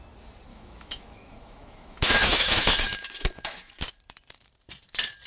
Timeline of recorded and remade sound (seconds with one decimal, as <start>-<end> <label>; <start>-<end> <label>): 0.0-0.5 recorded; 0.5-3.7 remade; 3.7-5.3 recorded